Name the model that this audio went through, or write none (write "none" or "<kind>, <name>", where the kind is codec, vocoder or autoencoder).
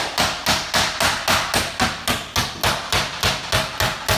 none